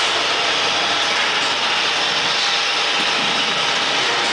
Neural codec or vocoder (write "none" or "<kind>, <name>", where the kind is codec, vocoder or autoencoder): none